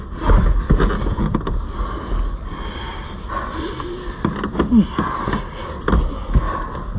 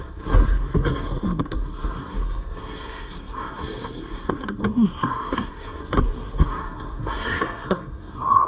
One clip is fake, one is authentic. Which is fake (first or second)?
second